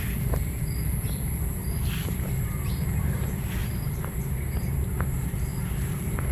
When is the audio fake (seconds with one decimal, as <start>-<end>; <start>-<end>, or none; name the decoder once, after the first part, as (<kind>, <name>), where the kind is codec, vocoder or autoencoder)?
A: 1.6-2.4 (vocoder, BigVGAN v2); 3.6-4.2